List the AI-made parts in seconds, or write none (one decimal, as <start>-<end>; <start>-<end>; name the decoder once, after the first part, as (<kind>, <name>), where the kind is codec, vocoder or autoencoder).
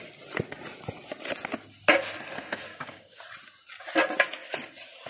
2.7-3.2 (codec, DAC)